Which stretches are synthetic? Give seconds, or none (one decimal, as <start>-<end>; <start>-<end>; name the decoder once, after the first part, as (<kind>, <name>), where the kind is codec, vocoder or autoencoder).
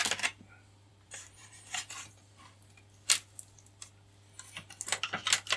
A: 0.9-2.4 (vocoder, BigVGAN v2)